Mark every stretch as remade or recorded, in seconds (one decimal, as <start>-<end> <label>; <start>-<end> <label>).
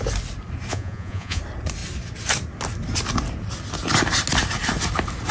0.0-0.7 recorded; 0.7-1.4 remade; 1.4-5.3 recorded